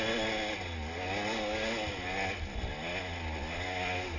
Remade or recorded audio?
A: recorded